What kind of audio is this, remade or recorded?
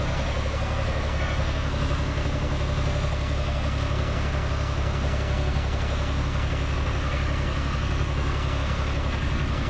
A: remade